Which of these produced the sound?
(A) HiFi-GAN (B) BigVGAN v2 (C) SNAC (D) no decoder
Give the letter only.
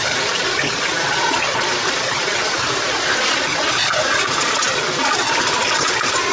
D